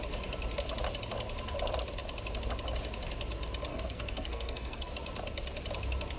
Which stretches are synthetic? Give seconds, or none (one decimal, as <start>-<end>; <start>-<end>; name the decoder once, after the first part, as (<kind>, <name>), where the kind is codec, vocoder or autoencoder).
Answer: 3.7-4.9 (codec, SNAC)